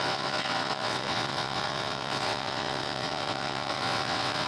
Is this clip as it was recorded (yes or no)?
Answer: no